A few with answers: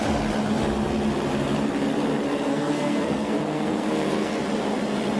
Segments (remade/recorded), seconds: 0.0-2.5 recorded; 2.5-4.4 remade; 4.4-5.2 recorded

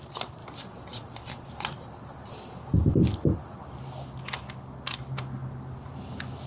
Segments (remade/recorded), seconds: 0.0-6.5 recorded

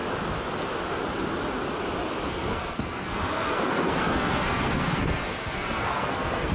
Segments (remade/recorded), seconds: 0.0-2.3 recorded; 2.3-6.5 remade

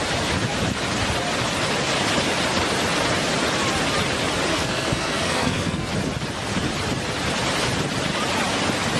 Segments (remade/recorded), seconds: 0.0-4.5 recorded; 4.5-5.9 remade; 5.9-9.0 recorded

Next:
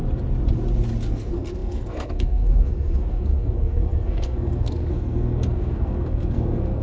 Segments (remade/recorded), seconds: 0.0-1.1 recorded; 1.1-6.8 remade

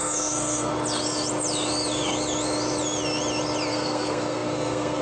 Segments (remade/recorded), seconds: 0.0-0.7 remade; 0.7-3.7 recorded; 3.7-5.0 remade